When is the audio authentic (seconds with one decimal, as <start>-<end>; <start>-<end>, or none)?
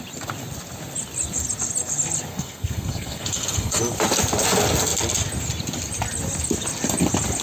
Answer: 0.0-2.3; 3.8-7.4